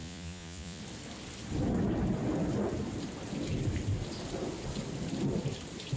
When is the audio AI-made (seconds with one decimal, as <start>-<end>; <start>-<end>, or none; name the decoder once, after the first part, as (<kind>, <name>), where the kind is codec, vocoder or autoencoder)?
0.0-0.8 (vocoder, Vocos)